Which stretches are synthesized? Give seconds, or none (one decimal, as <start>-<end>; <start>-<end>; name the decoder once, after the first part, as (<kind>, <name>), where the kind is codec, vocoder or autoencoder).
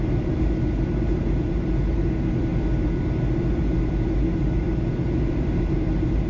none